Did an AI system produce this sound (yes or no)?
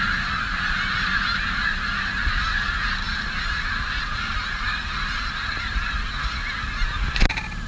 no